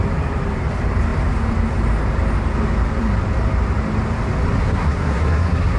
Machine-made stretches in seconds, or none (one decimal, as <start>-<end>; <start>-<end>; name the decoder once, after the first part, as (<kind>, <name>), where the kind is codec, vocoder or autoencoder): 4.6-5.8 (codec, SNAC)